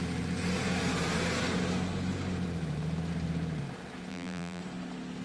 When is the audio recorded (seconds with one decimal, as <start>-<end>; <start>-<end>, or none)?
0.0-4.1; 4.6-5.2

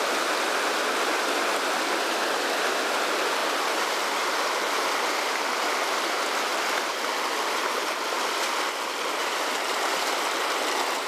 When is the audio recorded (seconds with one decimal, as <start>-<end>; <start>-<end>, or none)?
0.0-3.4; 3.9-6.5; 10.0-11.1

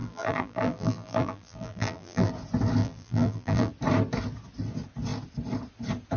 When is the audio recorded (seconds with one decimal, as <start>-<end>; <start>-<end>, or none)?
2.3-2.8; 3.7-6.2

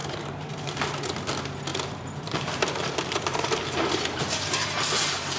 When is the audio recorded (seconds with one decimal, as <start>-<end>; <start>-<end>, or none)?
0.8-1.7; 4.9-5.4

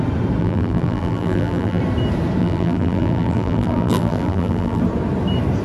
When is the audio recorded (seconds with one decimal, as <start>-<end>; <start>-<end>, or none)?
0.0-0.4; 1.8-2.4; 4.8-5.6